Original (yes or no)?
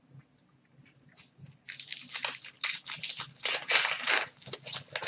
yes